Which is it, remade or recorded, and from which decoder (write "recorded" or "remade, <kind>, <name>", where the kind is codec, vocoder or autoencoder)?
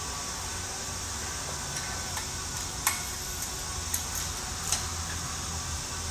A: recorded